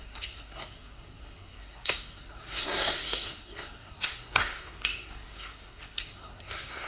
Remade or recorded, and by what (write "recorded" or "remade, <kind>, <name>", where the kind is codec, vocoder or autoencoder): remade, codec, SNAC